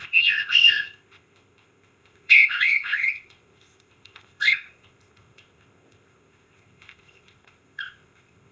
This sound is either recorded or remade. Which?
remade